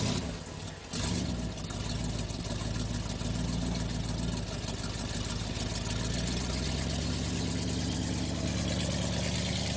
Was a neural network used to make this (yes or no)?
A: no